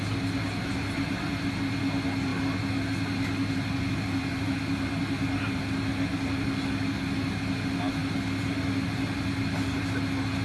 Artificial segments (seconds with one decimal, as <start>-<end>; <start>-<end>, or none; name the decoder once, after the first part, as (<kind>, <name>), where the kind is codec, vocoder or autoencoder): none